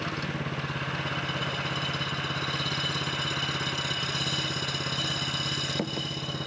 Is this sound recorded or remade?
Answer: recorded